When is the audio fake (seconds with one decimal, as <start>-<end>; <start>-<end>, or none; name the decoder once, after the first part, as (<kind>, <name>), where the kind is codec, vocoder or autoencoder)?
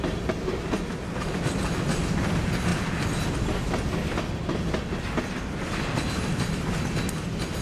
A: none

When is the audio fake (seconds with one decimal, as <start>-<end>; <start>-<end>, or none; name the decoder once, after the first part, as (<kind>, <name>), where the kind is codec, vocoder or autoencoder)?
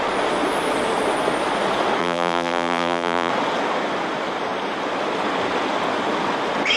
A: 2.0-3.3 (vocoder, BigVGAN v2)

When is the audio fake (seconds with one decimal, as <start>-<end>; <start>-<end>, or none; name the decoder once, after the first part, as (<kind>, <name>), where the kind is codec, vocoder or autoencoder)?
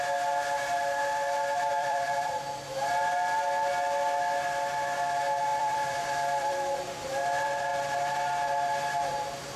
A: 1.7-2.3 (vocoder, BigVGAN v2); 5.5-6.8